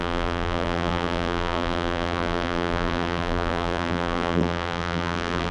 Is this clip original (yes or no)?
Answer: no